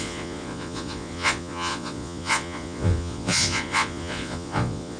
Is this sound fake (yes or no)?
yes